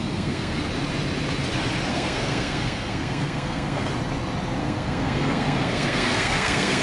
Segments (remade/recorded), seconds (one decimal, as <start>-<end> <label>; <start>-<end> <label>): 0.0-0.6 remade; 0.6-1.9 recorded; 1.9-3.9 remade; 3.9-4.6 recorded; 4.6-6.8 remade